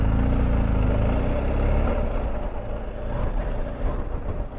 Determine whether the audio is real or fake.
real